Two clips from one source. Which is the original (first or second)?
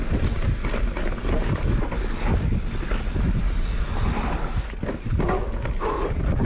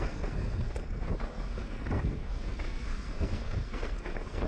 first